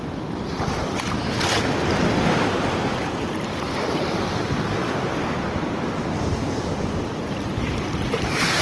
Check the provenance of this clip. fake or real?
real